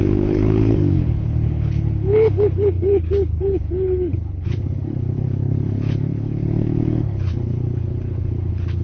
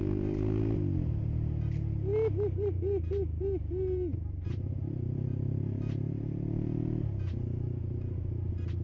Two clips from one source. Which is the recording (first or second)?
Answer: second